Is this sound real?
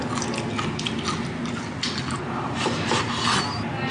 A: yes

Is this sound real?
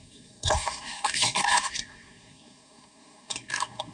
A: no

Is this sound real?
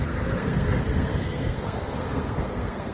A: no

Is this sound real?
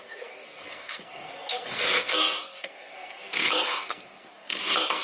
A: no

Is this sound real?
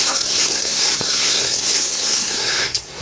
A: no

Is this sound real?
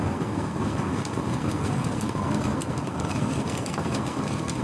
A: no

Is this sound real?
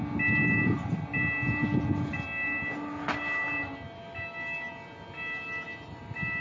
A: yes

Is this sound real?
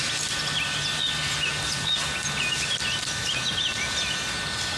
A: yes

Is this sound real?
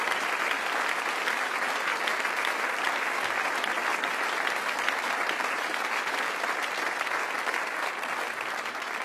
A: yes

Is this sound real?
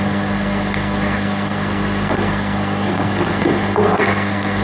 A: no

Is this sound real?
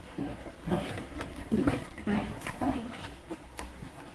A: no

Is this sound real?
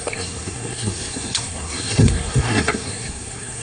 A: no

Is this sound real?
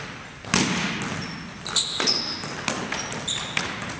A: yes